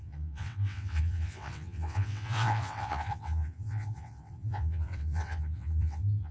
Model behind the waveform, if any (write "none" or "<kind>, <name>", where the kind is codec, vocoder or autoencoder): vocoder, WaveNeXt